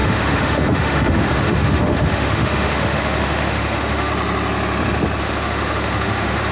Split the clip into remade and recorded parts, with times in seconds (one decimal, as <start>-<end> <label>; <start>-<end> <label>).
0.0-4.1 remade; 4.1-5.2 recorded; 5.2-6.5 remade